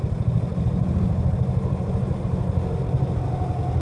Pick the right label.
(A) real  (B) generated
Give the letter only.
A